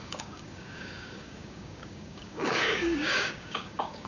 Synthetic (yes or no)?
yes